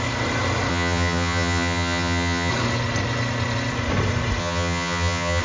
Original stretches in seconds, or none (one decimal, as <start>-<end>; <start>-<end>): 0.0-0.7; 2.5-4.4